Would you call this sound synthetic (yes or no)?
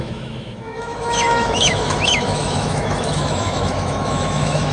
yes